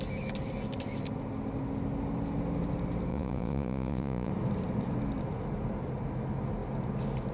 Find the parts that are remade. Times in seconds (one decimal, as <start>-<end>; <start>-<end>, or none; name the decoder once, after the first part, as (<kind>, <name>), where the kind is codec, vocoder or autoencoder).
3.1-4.3 (vocoder, Vocos)

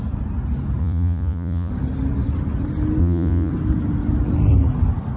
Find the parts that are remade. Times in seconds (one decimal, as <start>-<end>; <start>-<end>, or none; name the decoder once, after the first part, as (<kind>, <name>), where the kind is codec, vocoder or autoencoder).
0.8-1.7 (vocoder, Vocos); 3.0-3.5

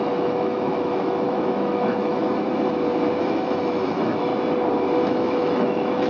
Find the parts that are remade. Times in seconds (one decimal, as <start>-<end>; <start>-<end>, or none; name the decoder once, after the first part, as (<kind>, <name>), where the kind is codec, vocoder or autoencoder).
0.0-2.2 (autoencoder, DAC-VAE); 3.2-4.3; 5.1-6.1

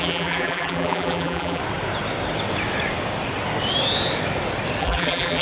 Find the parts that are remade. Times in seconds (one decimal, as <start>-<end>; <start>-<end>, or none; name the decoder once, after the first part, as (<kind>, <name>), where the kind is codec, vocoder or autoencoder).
0.0-1.6 (vocoder, BigVGAN v2); 4.8-5.4

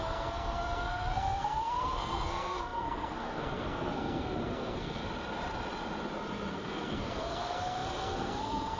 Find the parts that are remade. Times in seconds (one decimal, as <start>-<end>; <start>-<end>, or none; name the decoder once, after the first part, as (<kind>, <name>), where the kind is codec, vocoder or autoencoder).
0.0-5.0 (codec, SNAC); 6.5-8.8

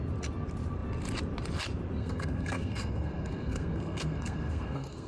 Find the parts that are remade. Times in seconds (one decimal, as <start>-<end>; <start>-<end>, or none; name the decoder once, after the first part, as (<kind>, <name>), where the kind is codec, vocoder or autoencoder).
2.0-5.1 (codec, SNAC)

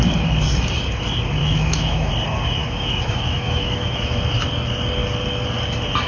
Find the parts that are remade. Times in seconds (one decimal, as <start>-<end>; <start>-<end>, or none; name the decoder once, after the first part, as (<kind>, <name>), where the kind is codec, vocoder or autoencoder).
1.4-2.1 (autoencoder, DAC-VAE); 2.6-4.2